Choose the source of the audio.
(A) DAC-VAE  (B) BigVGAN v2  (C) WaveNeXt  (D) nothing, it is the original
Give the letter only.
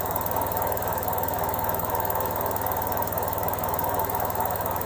A